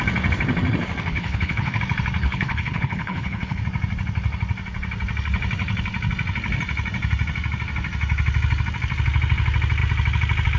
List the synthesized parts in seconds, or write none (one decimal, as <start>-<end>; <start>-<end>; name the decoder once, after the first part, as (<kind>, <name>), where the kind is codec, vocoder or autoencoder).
1.1-1.8 (codec, HILCodec); 2.2-3.6